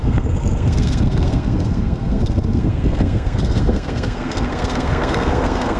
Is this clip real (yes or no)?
no